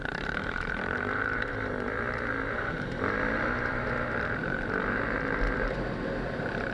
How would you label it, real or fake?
fake